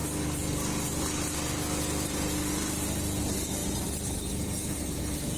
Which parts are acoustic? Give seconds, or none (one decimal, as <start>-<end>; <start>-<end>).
0.0-3.6